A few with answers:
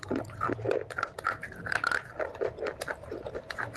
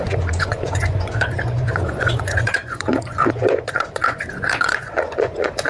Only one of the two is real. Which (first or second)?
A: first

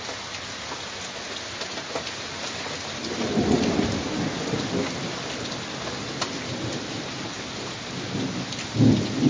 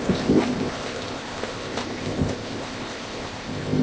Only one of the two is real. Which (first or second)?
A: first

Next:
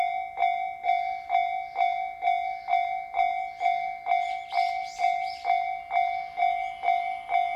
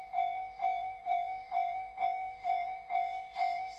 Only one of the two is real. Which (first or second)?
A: first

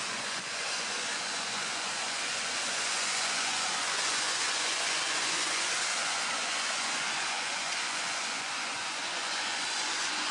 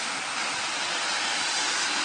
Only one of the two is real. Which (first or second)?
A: second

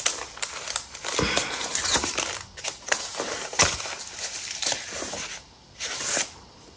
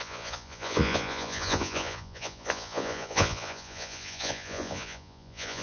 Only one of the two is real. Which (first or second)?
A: first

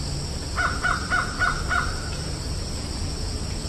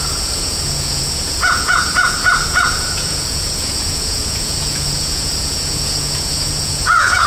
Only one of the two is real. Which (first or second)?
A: first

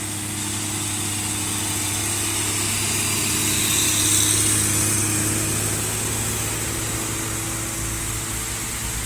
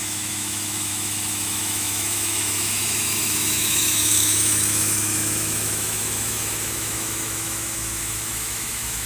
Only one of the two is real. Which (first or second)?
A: first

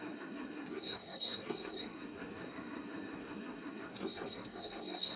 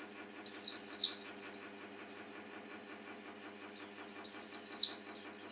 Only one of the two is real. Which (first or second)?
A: second